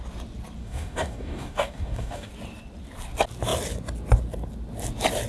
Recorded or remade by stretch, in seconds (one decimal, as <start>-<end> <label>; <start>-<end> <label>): 0.0-0.6 recorded; 0.6-2.3 remade; 2.3-5.3 recorded